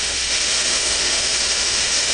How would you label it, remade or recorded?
remade